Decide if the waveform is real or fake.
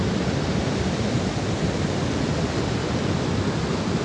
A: fake